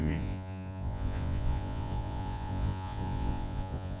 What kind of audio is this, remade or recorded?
remade